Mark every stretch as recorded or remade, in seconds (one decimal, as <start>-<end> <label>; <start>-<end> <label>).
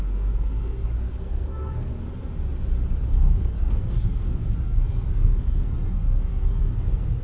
0.0-1.9 remade; 1.9-3.1 recorded; 3.1-7.2 remade